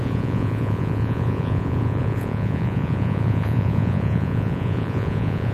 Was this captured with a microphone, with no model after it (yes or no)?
no